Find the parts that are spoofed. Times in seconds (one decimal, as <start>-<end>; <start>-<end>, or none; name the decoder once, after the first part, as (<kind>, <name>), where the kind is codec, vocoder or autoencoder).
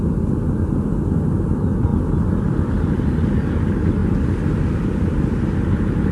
none